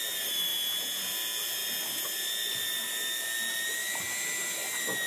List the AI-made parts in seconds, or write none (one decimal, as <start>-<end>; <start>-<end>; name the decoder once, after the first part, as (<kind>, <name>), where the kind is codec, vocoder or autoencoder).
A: 0.5-1.0 (vocoder, Vocos)

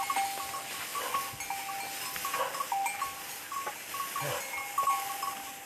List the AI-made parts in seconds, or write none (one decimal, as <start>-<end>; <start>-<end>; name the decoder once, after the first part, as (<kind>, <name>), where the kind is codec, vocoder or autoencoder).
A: none